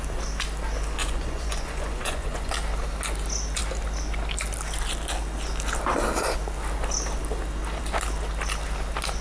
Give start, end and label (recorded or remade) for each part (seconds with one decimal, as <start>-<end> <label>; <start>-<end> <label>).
0.0-1.0 recorded; 1.0-2.5 remade; 2.5-9.2 recorded